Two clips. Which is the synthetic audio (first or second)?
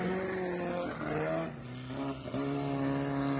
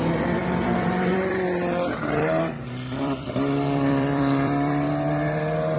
second